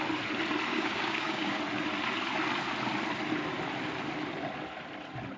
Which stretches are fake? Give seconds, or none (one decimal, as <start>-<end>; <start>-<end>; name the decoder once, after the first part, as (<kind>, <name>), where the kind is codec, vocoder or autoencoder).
0.7-1.6 (codec, DAC)